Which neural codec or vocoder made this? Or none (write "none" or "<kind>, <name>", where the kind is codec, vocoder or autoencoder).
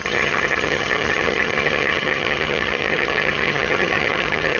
vocoder, HiFi-GAN